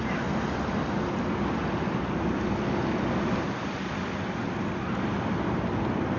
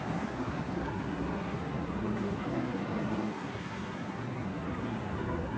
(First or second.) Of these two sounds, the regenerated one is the second